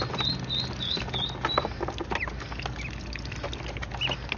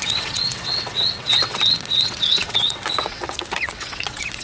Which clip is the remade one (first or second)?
second